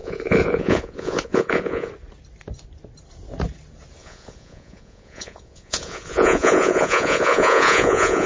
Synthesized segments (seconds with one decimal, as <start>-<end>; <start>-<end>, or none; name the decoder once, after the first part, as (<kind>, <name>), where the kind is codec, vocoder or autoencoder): 0.0-1.9 (vocoder, Vocos); 4.0-8.3